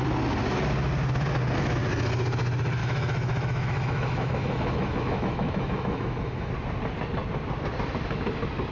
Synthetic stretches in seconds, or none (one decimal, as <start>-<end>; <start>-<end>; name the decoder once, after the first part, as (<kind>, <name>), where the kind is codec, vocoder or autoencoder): 2.8-6.5 (autoencoder, DAC-VAE)